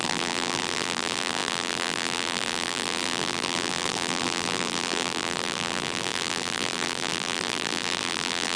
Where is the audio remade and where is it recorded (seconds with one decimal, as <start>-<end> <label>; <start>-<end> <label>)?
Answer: 0.0-8.6 remade